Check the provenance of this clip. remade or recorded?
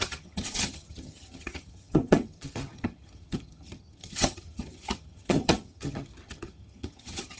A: remade